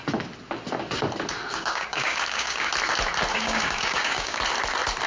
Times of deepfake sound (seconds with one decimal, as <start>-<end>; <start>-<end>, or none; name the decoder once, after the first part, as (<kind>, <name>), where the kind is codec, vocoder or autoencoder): 1.5-2.7 (codec, DAC); 3.3-4.4